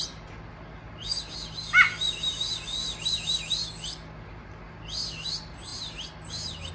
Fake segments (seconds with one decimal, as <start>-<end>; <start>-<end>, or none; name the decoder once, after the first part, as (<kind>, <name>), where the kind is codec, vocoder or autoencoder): none